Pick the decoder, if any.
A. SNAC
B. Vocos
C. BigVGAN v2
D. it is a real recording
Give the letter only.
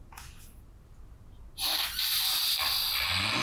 D